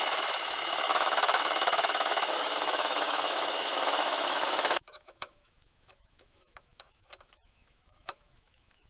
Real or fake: fake